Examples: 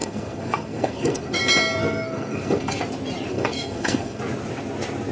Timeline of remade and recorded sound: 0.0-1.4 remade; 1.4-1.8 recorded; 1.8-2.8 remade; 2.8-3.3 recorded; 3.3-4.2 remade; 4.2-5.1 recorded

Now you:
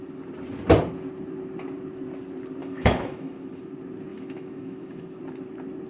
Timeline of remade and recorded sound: 0.0-2.6 recorded; 2.6-3.6 remade; 3.6-4.1 recorded; 4.1-5.2 remade; 5.2-5.9 recorded